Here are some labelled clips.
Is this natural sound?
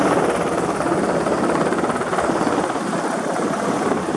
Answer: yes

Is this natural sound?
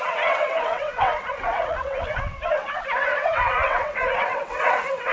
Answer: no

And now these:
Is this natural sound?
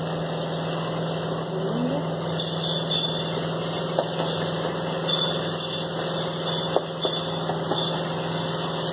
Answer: yes